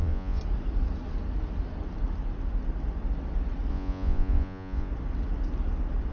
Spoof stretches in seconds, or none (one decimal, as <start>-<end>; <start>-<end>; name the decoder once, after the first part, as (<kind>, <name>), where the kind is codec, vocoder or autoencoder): 0.0-0.4 (vocoder, Vocos); 3.7-4.9